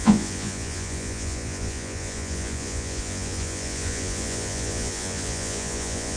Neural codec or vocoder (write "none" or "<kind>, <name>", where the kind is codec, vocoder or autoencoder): vocoder, Vocos